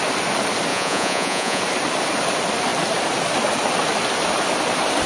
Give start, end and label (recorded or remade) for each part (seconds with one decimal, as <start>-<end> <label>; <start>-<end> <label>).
0.0-0.7 recorded; 0.7-1.6 remade; 1.6-5.1 recorded